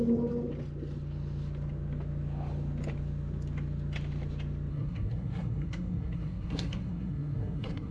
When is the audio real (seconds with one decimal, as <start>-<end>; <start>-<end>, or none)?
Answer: 0.0-4.7